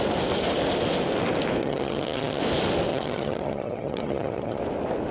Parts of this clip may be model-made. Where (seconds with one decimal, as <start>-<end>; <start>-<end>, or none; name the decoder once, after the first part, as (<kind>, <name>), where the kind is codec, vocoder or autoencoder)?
1.6-2.4 (vocoder, HiFi-GAN); 2.9-4.6